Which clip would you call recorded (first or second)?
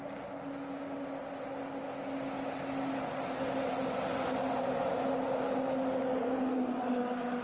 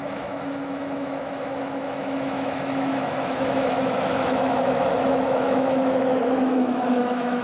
first